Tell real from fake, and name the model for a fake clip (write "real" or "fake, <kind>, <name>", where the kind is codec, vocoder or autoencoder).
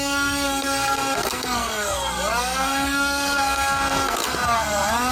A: fake, codec, SNAC